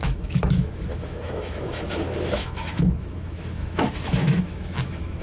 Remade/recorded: remade